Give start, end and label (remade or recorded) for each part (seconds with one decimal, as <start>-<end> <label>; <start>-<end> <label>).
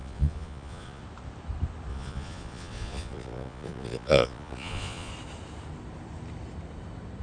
0.0-1.0 remade; 1.0-1.9 recorded; 1.9-5.1 remade; 5.1-7.2 recorded